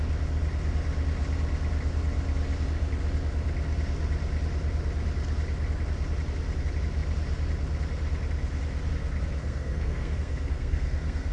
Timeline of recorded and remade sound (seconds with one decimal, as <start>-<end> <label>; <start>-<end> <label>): 0.0-9.4 recorded; 9.4-11.3 remade